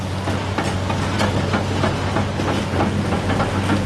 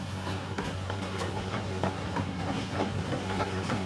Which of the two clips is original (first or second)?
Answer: first